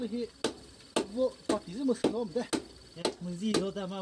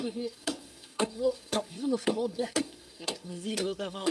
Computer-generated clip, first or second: second